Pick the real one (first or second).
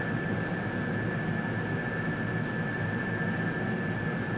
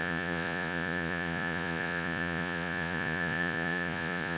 first